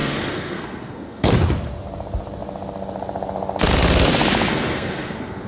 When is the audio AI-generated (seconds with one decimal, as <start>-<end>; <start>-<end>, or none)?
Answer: 0.0-1.3; 4.5-5.5